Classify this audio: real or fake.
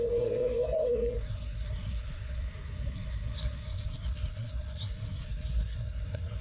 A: fake